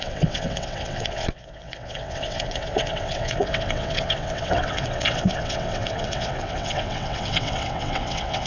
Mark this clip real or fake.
fake